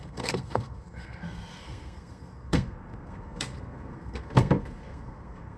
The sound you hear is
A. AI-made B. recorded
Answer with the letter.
A